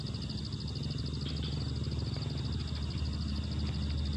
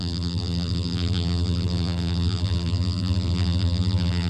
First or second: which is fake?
second